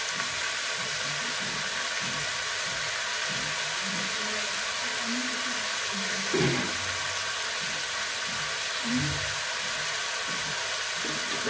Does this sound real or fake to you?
real